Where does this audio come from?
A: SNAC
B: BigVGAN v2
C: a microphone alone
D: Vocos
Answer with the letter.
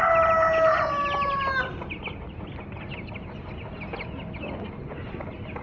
C